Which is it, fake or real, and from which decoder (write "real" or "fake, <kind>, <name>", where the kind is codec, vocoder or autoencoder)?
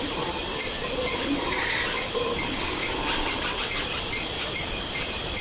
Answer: fake, vocoder, BigVGAN v2